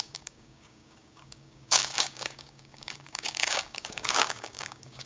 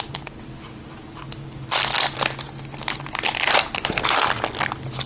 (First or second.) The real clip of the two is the second